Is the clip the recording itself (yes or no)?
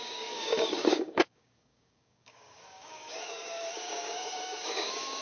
no